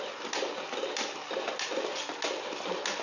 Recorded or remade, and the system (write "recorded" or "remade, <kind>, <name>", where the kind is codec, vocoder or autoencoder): recorded